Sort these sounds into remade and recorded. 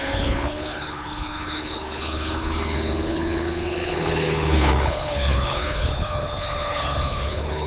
remade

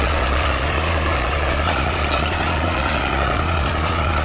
remade